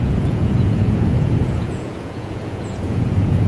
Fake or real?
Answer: fake